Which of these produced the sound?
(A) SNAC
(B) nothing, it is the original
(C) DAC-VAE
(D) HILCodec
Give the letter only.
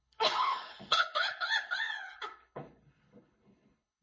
D